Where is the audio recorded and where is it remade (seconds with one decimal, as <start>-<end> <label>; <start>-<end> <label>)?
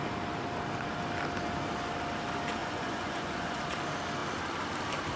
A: 0.0-2.6 recorded; 2.6-3.6 remade; 3.6-5.2 recorded